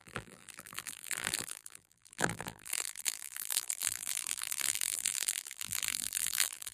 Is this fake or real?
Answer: fake